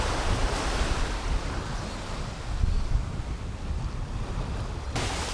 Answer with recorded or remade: recorded